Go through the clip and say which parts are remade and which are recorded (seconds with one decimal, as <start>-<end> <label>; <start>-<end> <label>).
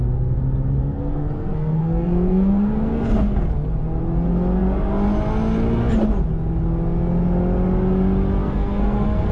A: 0.0-0.8 recorded; 0.8-3.5 remade; 3.5-8.4 recorded; 8.4-9.3 remade